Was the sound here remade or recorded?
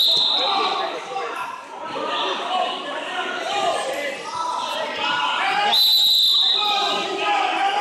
recorded